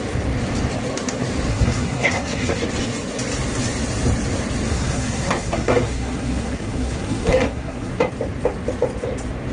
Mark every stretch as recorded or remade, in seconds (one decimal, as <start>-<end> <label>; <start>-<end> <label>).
0.0-1.5 recorded; 1.5-2.6 remade; 2.6-4.7 recorded; 4.7-7.9 remade; 7.9-9.5 recorded